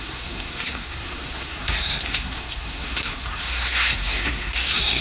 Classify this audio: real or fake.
fake